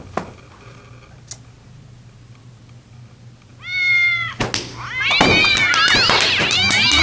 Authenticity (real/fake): real